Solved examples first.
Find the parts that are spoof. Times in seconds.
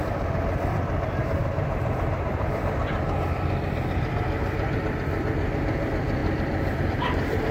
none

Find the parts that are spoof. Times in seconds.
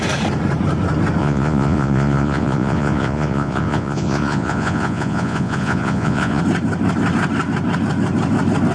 1.2-6.4 (vocoder, Vocos)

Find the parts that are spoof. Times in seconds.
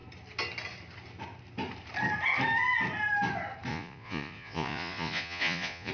3.7-5.9 (vocoder, Vocos)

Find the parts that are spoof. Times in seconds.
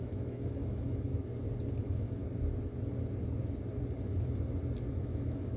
0.0-1.1 (autoencoder, DAC-VAE); 1.8-2.2; 4.9-5.6